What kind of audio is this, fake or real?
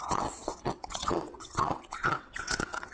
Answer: fake